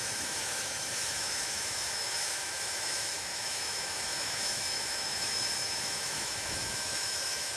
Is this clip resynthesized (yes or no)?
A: yes